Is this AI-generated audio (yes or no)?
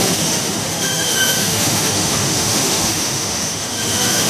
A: yes